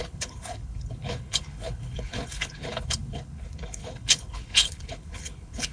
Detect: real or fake fake